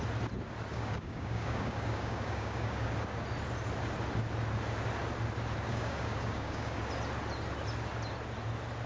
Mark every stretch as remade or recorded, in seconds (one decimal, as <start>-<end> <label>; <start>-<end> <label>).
0.0-0.7 recorded; 0.7-2.9 remade; 2.9-5.7 recorded; 5.7-6.8 remade; 6.8-8.9 recorded